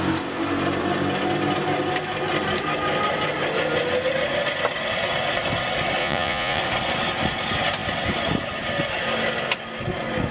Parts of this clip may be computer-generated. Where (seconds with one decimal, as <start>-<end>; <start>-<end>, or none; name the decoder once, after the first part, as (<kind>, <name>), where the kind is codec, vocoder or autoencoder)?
6.0-6.6 (vocoder, Vocos)